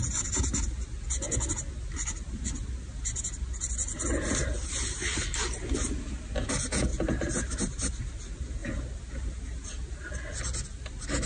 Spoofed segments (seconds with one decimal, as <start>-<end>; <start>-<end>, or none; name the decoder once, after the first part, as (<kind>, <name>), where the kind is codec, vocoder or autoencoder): 6.9-8.0 (vocoder, BigVGAN v2)

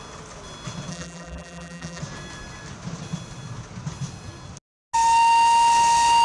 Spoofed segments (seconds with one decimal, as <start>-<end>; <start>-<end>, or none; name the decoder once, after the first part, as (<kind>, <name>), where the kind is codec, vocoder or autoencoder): 0.9-2.0 (vocoder, BigVGAN v2)

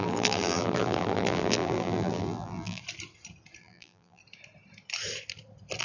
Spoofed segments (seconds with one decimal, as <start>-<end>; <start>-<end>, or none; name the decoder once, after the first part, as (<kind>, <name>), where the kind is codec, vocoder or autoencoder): 0.0-2.8 (vocoder, BigVGAN v2); 3.6-4.2

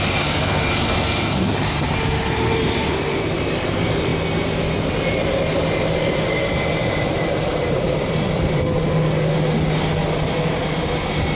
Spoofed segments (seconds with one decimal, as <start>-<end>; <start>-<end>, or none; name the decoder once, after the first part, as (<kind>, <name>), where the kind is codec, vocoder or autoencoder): 6.8-8.6 (vocoder, BigVGAN v2)